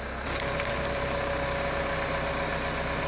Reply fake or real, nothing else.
real